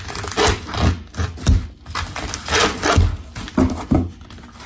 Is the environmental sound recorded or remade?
recorded